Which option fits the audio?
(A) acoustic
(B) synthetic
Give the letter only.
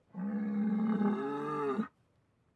A